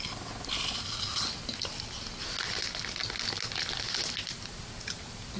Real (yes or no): yes